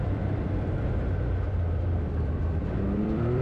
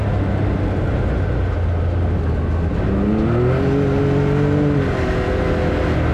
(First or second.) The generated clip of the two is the first